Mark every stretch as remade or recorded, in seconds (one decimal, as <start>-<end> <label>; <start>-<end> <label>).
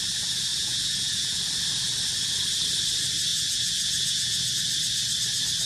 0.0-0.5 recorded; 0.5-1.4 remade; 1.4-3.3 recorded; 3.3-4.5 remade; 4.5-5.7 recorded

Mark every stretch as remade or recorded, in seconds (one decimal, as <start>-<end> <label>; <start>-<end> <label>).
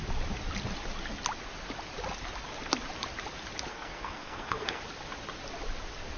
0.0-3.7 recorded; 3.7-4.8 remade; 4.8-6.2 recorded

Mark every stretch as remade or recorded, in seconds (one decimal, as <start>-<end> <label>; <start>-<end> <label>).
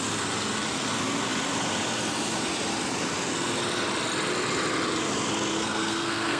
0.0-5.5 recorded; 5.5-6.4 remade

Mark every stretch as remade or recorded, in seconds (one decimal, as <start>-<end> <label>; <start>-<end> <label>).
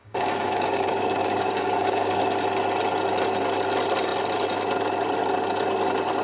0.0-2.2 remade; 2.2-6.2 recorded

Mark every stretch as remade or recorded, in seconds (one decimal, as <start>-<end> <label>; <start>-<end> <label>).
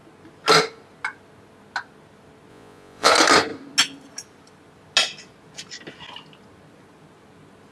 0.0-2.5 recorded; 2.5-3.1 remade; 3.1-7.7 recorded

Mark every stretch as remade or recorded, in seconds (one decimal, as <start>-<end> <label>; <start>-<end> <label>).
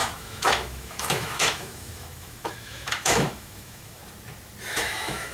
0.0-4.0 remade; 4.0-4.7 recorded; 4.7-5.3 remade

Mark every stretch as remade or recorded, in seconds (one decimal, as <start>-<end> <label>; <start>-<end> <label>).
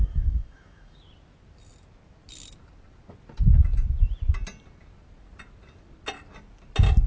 0.0-1.0 remade; 1.0-7.1 recorded